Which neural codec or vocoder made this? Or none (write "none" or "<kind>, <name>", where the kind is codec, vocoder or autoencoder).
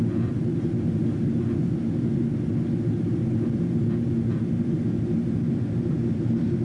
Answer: none